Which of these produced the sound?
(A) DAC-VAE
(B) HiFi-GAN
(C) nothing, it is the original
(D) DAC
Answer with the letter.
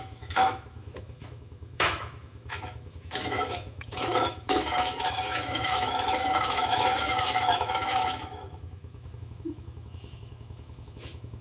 A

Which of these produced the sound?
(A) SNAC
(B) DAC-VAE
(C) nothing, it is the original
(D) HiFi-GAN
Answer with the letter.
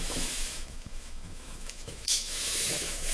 B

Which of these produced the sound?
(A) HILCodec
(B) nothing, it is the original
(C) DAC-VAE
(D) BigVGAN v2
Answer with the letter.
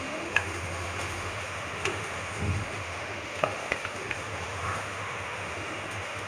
C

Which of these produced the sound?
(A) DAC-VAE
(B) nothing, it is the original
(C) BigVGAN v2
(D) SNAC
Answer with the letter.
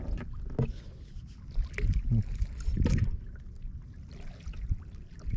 B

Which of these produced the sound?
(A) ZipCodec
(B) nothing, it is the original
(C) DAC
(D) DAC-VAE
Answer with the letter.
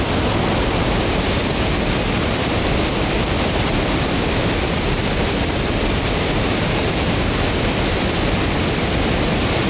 B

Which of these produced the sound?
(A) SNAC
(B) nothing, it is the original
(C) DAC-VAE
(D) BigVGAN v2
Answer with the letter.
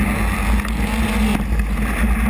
B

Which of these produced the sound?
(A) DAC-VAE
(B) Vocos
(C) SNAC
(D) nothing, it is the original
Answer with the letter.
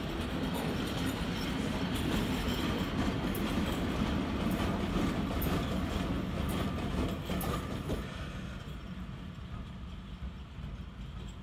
D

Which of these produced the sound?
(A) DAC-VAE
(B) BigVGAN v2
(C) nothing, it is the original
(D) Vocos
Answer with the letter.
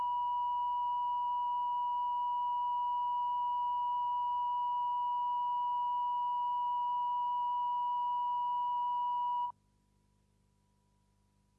C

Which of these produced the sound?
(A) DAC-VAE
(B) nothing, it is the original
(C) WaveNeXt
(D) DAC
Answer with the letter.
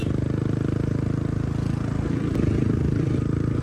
B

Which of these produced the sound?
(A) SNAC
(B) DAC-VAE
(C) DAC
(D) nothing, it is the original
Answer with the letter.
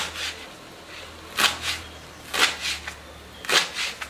D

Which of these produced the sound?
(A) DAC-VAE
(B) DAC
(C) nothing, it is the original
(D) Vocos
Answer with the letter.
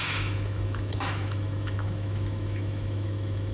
A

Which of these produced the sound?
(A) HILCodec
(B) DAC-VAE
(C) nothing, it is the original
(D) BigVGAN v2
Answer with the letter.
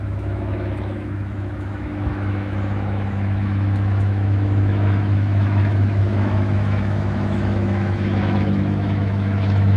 B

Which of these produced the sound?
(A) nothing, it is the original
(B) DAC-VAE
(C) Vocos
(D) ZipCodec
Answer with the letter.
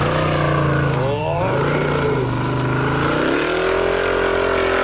A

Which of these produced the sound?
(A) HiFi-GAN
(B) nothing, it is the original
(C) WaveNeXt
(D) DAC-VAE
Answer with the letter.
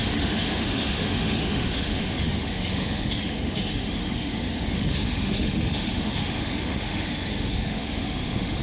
D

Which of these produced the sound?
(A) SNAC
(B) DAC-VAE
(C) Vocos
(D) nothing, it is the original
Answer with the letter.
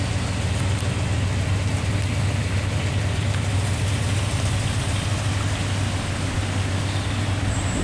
D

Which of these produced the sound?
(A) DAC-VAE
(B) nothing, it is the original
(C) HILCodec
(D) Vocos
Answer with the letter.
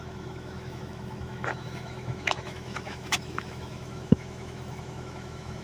A